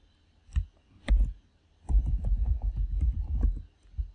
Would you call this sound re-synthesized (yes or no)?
no